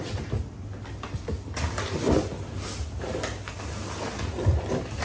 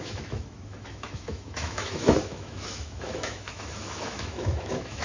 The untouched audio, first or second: first